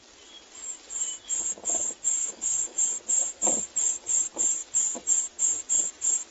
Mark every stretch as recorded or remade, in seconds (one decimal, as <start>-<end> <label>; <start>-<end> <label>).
0.0-2.2 recorded; 2.2-2.8 remade; 2.8-6.3 recorded